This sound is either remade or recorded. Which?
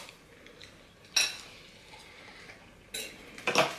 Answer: recorded